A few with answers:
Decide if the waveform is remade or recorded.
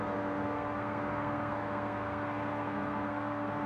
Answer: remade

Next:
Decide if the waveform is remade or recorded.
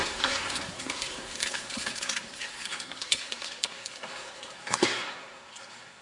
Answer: remade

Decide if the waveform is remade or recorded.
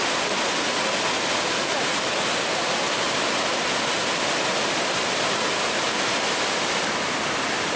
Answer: recorded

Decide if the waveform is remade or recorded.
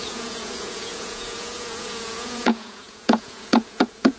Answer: remade